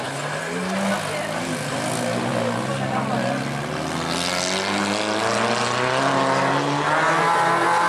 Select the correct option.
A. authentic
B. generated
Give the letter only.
A